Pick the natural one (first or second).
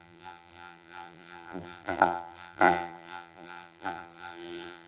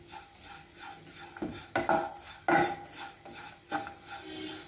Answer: second